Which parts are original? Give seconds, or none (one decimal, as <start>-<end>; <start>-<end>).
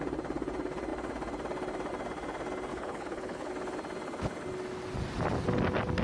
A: 0.0-2.7; 3.5-6.0